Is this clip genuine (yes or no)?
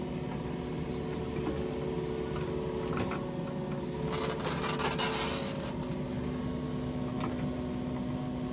yes